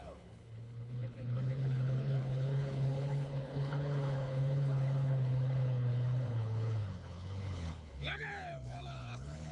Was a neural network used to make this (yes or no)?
yes